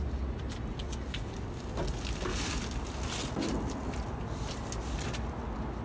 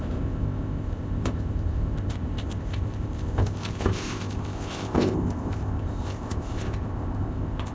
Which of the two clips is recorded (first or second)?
first